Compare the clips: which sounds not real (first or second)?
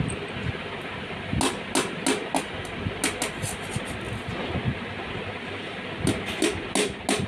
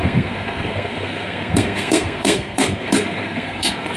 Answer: second